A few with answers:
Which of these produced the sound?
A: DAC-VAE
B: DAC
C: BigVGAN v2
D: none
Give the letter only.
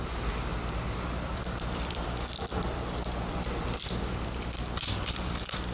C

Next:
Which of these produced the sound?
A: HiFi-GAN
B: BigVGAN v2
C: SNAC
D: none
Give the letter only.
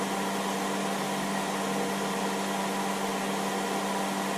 D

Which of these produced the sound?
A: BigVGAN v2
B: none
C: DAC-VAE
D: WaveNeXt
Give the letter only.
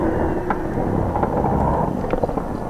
B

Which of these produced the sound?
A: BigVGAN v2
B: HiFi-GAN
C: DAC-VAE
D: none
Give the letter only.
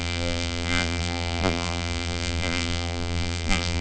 A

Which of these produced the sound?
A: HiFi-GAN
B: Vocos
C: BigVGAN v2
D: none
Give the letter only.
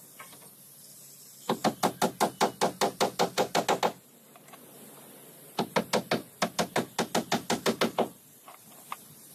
D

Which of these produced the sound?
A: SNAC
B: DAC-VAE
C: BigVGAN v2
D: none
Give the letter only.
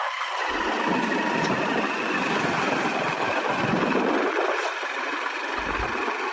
C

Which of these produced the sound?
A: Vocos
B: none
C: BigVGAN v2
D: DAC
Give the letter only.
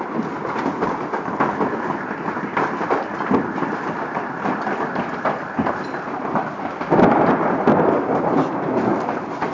C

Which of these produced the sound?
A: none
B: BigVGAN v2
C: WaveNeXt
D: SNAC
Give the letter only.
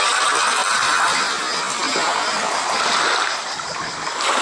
A